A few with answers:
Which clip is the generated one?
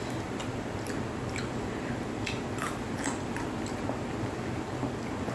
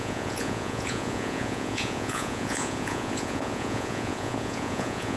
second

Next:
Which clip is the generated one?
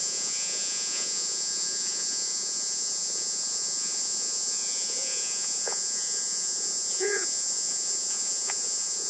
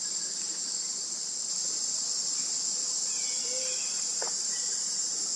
first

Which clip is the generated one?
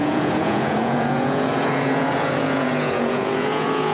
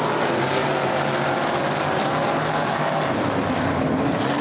first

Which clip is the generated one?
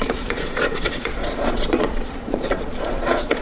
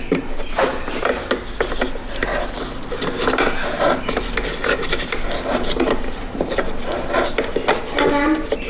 first